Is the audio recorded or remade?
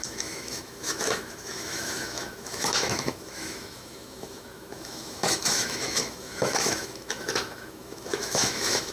remade